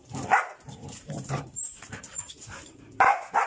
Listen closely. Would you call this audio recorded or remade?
remade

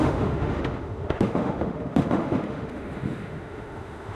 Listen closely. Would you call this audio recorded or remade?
remade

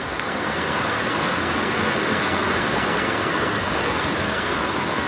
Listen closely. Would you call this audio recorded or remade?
remade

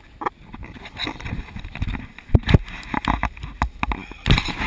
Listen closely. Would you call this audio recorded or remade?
recorded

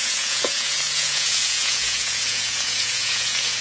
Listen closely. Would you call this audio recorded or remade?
remade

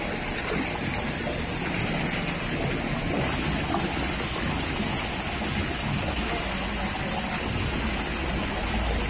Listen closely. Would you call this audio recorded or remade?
recorded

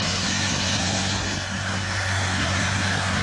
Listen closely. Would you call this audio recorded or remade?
remade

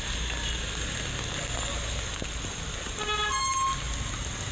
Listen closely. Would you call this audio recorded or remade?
recorded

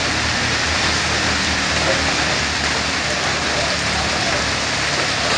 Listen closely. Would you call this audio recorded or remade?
recorded